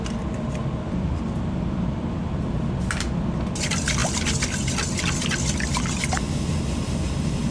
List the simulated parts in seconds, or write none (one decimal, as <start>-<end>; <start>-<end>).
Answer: none